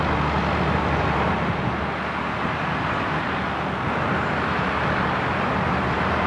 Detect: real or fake real